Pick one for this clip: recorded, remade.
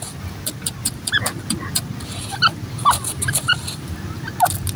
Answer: recorded